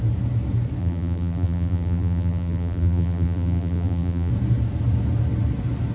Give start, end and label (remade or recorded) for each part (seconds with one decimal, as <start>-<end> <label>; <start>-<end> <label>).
0.0-0.8 recorded; 0.8-4.3 remade; 4.3-5.9 recorded